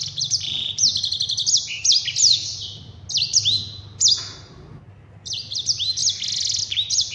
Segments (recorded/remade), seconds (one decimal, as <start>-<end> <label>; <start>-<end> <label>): 0.0-0.9 remade; 0.9-5.2 recorded; 5.2-6.0 remade; 6.0-6.6 recorded; 6.6-7.1 remade